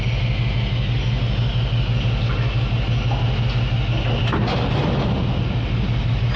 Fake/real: real